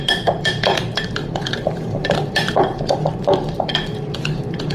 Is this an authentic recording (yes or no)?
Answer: no